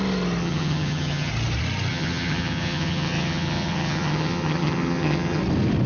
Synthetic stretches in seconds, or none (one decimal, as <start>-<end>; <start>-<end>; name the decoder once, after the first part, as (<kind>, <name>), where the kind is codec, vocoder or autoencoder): 0.4-1.3 (vocoder, HiFi-GAN); 1.9-5.4